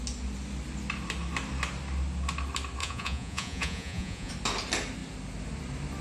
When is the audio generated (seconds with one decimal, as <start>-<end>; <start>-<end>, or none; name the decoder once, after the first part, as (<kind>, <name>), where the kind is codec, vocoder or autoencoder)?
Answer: 2.8-4.3 (vocoder, Vocos)